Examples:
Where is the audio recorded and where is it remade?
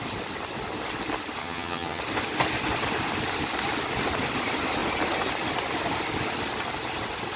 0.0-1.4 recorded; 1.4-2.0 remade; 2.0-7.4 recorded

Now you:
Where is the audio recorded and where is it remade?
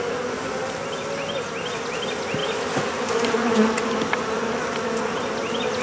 0.0-5.8 recorded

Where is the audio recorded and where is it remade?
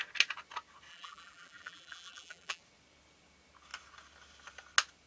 0.0-0.9 recorded; 0.9-2.6 remade; 2.6-5.1 recorded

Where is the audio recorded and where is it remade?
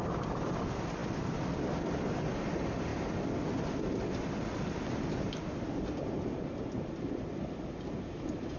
0.0-8.6 recorded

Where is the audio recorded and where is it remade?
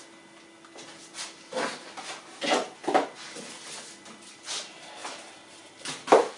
0.0-6.4 recorded